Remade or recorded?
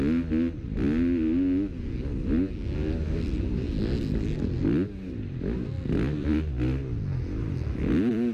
recorded